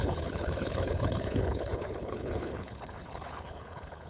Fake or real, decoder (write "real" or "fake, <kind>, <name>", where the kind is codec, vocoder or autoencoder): fake, codec, HILCodec